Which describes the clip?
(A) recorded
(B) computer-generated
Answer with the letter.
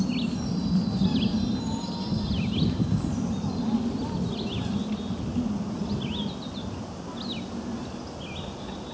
A